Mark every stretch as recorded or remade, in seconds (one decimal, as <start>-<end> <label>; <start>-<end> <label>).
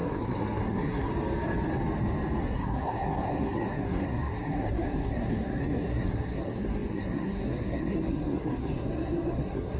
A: 0.0-1.1 remade; 1.1-2.4 recorded; 2.4-9.8 remade